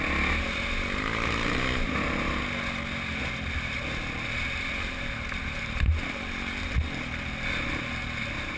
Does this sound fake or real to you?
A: real